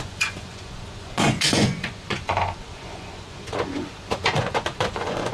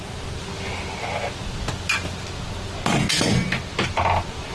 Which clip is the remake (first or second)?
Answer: first